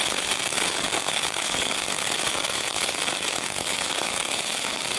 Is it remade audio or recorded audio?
remade